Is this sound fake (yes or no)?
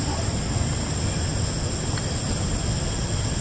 no